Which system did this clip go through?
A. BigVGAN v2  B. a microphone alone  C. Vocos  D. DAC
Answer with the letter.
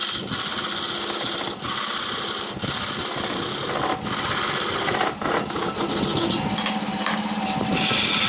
B